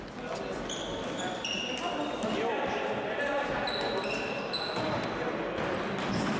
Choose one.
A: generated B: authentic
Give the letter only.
B